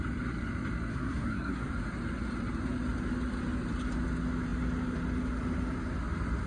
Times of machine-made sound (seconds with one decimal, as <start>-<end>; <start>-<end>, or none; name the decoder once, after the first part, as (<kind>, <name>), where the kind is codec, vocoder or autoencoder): 0.9-1.7 (codec, SNAC)